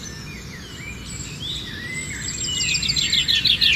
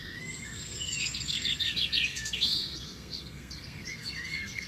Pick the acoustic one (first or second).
first